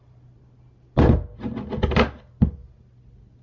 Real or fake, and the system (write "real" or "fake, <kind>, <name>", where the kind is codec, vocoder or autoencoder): real